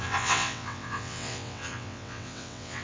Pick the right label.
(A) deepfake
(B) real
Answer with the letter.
A